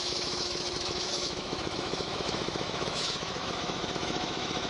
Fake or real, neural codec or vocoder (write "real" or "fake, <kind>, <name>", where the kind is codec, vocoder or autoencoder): fake, autoencoder, DAC-VAE